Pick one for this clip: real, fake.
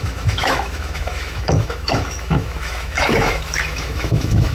fake